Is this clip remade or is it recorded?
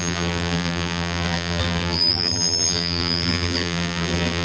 remade